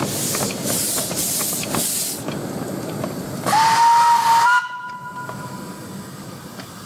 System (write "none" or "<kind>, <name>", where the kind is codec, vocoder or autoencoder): none